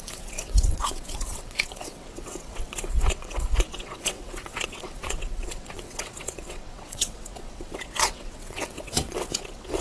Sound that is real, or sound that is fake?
fake